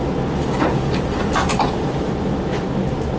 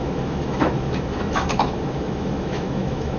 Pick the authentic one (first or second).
first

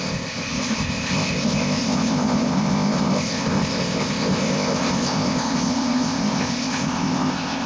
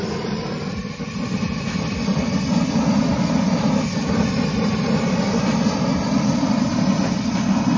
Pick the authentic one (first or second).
second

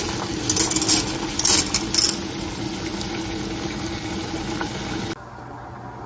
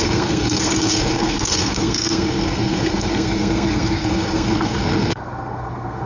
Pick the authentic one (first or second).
first